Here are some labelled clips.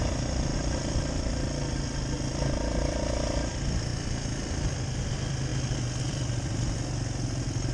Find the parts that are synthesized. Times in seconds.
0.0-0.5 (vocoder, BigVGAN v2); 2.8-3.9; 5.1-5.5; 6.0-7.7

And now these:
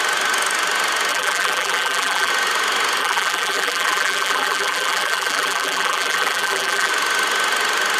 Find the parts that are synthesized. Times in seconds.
1.1-2.3 (vocoder, BigVGAN v2); 3.0-6.9

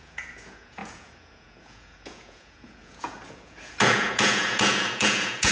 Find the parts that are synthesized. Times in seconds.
0.0-5.5 (vocoder, Vocos)

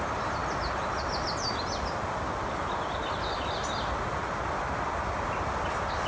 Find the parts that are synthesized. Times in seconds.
none

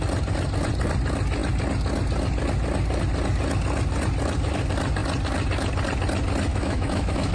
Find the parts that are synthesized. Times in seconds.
6.5-7.3 (autoencoder, DAC-VAE)